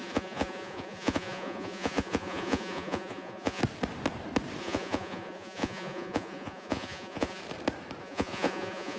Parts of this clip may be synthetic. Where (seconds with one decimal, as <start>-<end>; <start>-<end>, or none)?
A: 0.0-3.6; 4.6-7.4; 8.0-9.0